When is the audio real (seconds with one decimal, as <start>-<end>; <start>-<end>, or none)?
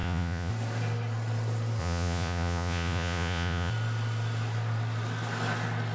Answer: 0.5-1.8; 3.7-5.9